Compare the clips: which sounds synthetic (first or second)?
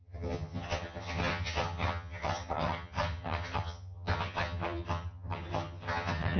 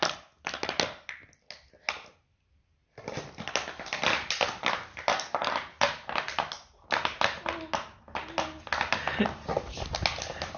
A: first